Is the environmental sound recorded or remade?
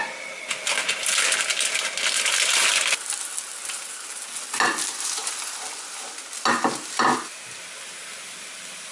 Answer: recorded